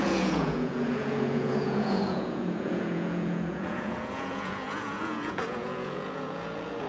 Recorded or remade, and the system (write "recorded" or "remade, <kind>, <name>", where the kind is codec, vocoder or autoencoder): remade, vocoder, Vocos